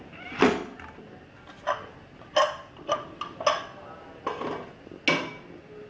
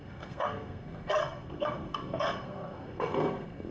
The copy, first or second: second